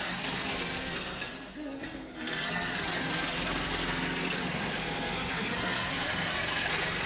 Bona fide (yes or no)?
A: no